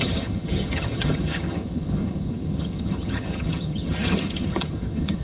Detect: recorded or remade remade